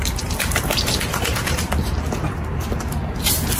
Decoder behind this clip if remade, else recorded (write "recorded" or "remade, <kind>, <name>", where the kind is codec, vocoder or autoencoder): recorded